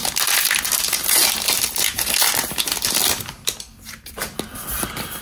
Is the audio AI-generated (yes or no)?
no